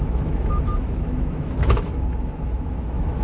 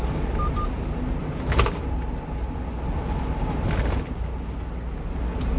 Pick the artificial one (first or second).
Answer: first